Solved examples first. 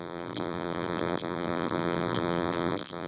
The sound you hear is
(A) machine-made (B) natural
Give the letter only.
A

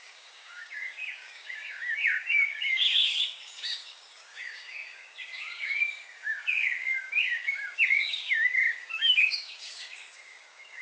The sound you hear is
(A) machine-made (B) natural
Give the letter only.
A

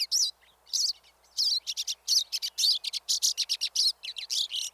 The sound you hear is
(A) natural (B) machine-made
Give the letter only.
A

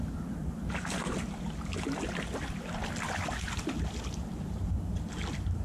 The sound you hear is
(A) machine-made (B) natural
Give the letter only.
B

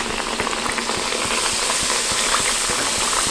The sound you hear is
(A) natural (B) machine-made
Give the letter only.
A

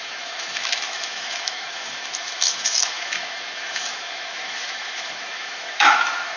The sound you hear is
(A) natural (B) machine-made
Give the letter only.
B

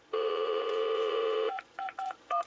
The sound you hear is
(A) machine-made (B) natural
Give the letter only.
A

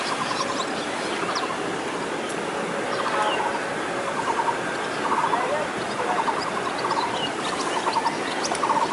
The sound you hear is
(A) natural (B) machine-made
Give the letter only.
A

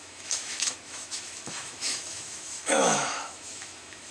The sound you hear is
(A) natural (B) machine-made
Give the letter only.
B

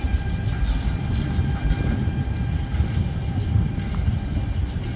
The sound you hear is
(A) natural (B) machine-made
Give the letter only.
A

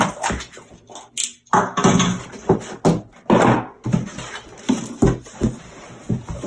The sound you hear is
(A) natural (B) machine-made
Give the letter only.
A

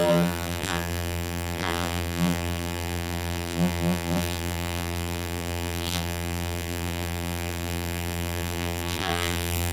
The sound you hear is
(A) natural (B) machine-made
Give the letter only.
B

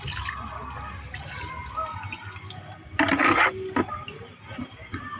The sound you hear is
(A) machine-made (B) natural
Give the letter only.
B